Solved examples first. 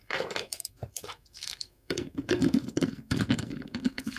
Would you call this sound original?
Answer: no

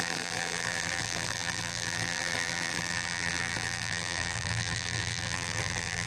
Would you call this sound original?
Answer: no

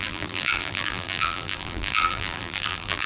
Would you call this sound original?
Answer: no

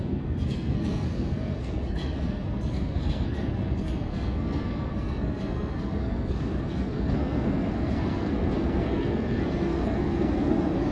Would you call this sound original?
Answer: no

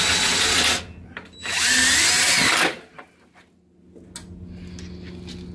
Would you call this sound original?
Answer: yes